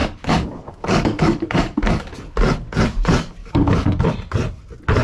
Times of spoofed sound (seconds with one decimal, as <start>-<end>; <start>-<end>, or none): 0.0-2.2; 3.4-4.1

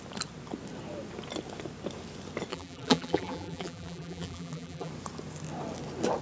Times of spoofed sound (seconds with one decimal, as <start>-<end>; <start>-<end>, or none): 2.5-4.9